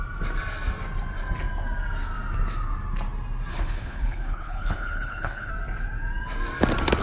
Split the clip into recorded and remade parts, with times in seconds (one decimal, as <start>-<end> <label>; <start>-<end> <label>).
0.0-3.5 recorded; 3.5-5.5 remade; 5.5-7.0 recorded

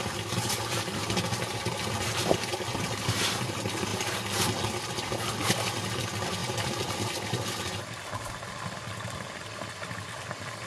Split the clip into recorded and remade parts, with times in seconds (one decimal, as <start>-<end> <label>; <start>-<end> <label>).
0.0-10.7 recorded

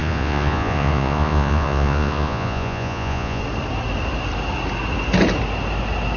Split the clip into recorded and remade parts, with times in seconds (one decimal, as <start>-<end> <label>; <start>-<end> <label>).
0.0-3.4 remade; 3.4-6.2 recorded

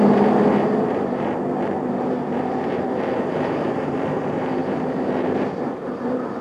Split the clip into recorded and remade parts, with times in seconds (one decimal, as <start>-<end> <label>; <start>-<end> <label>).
0.0-6.4 remade

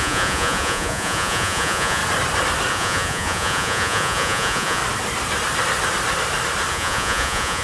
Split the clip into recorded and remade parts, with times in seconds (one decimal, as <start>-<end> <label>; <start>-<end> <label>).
0.0-2.0 remade; 2.0-2.7 recorded; 2.7-4.8 remade; 4.8-6.7 recorded; 6.7-7.6 remade

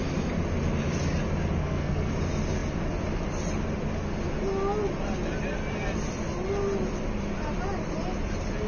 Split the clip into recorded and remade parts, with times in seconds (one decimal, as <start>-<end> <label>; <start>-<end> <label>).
0.0-1.6 recorded; 1.6-2.1 remade; 2.1-8.7 recorded